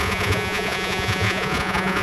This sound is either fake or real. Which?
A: fake